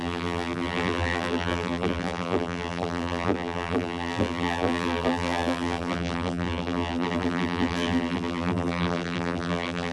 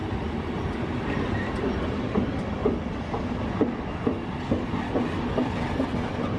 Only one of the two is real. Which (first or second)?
second